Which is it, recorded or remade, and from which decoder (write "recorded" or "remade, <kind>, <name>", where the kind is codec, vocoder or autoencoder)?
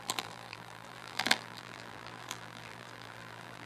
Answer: remade, vocoder, BigVGAN v2